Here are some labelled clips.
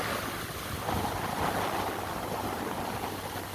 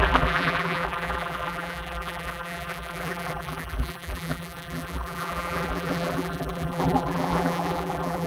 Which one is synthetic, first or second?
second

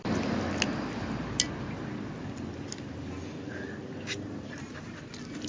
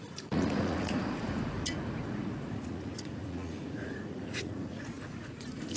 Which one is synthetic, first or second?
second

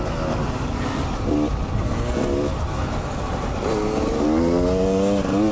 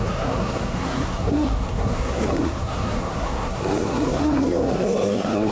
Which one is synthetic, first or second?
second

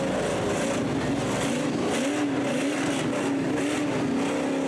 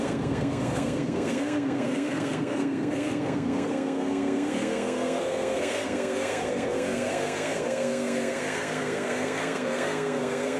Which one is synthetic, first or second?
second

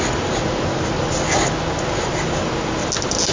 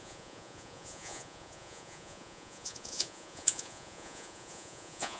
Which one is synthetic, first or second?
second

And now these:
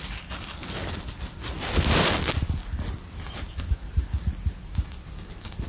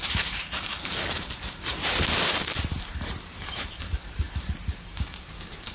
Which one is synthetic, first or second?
second